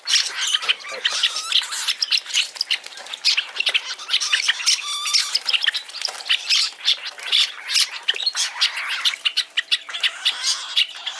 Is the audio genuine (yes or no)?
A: yes